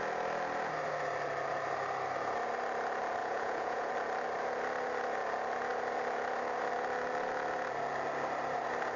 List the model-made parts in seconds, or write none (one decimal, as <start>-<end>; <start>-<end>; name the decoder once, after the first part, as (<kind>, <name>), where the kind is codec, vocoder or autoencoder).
3.2-3.9 (vocoder, Vocos)